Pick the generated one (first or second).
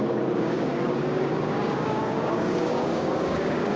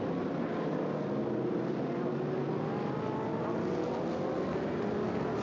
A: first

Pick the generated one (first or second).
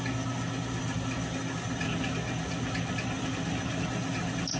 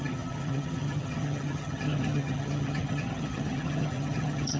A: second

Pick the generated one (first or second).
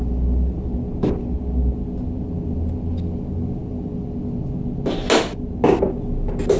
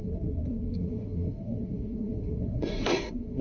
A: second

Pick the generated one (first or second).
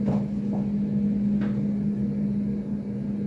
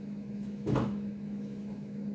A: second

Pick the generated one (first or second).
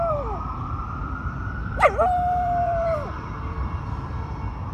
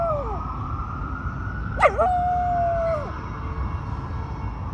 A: first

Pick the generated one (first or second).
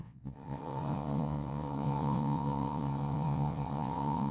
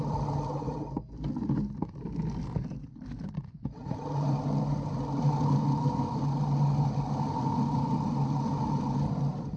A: first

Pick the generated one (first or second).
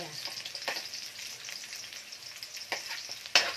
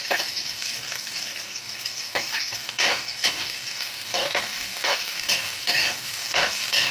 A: second